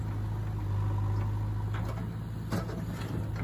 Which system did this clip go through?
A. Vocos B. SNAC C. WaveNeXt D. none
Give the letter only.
D